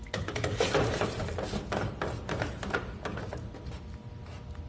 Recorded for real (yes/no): yes